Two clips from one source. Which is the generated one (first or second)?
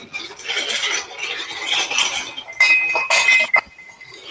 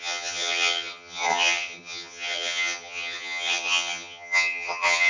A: second